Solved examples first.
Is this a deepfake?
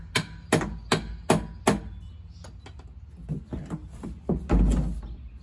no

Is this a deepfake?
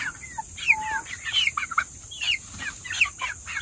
no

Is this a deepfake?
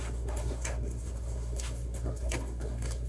yes